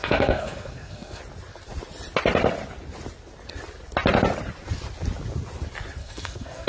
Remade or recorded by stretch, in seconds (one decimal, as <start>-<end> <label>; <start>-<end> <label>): 0.0-1.2 remade; 1.2-6.0 recorded; 6.0-6.7 remade